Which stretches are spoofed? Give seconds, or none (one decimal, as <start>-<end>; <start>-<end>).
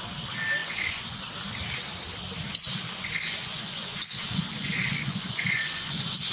0.6-1.2; 2.6-6.3